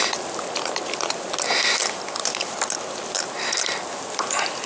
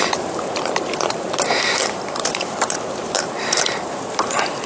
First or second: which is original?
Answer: first